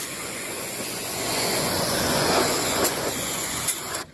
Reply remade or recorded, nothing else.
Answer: remade